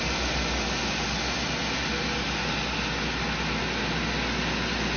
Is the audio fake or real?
real